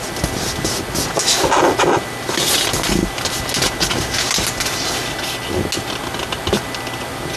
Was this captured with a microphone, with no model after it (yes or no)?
yes